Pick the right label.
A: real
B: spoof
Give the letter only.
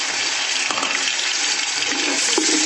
B